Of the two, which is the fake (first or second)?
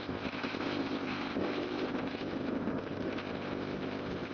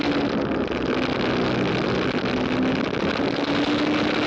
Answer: first